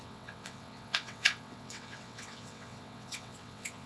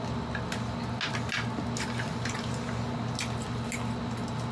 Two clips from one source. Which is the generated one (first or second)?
first